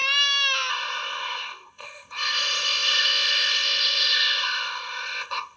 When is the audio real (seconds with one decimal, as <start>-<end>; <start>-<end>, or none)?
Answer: 0.0-0.7